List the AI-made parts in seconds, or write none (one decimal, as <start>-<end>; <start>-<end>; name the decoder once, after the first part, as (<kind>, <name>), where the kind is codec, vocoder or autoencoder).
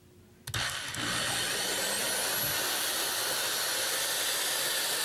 none